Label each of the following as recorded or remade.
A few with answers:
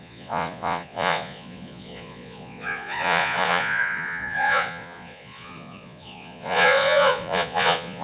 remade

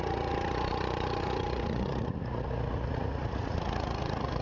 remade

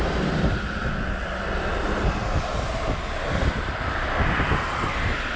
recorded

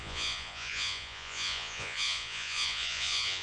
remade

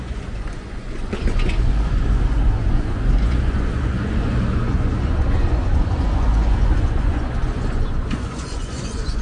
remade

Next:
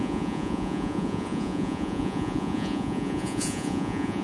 remade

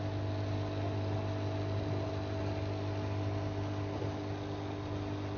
recorded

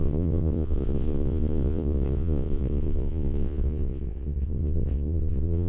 remade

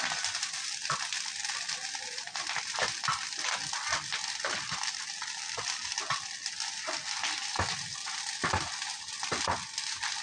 recorded